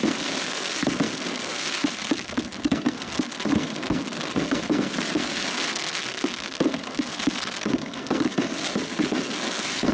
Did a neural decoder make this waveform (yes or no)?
yes